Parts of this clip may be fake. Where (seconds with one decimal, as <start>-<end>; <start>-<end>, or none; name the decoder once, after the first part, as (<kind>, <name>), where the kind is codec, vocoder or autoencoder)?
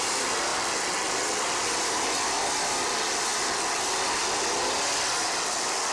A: none